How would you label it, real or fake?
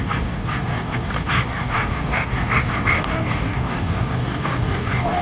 fake